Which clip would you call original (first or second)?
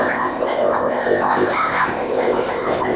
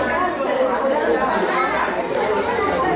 second